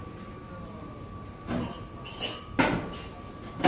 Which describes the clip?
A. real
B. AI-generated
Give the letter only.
A